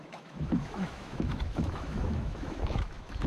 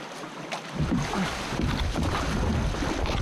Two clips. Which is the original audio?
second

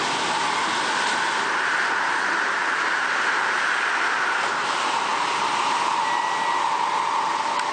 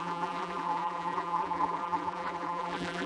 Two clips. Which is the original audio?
first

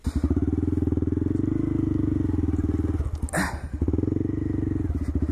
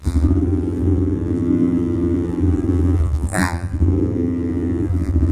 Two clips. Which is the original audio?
first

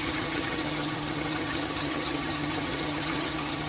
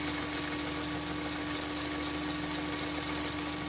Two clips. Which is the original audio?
second